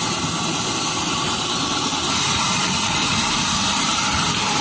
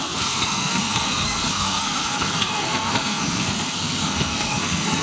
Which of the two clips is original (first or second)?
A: first